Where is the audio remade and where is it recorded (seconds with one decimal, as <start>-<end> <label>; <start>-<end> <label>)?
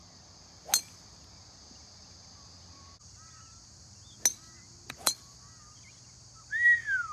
0.0-7.1 recorded